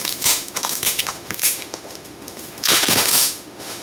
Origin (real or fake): fake